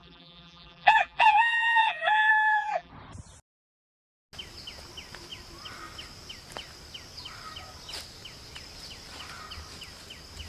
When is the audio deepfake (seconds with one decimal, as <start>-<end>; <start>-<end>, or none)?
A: 0.0-2.9